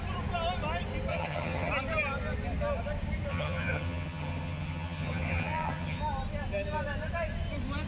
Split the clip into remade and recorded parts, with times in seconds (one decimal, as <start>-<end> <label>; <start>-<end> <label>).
0.0-1.1 recorded; 1.1-1.7 remade; 1.7-3.3 recorded; 3.3-6.0 remade; 6.0-7.9 recorded